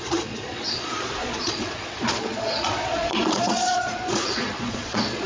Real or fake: fake